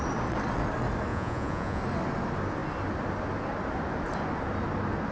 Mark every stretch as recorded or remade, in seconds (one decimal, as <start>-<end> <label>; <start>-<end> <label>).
0.0-1.1 recorded; 1.1-1.8 remade; 1.8-5.1 recorded